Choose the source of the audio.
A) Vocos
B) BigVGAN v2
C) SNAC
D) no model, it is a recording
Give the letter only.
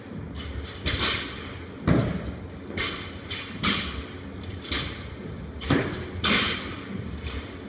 D